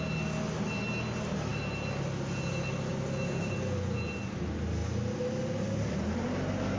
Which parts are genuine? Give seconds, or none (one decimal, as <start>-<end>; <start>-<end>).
0.0-6.8